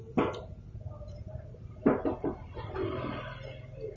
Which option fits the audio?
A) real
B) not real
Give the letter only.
A